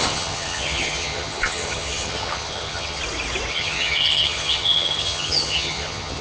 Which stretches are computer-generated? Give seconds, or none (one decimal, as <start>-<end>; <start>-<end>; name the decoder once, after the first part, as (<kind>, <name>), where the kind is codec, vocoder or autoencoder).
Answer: 0.0-3.0 (vocoder, HiFi-GAN); 3.5-6.2